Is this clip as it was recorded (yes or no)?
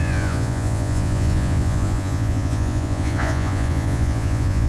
no